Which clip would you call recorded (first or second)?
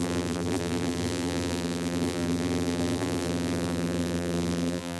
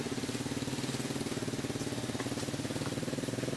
second